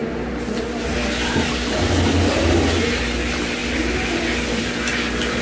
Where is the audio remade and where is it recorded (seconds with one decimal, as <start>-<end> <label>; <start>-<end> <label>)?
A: 0.0-5.4 recorded